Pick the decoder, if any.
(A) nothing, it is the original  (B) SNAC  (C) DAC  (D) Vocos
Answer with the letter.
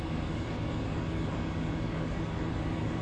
C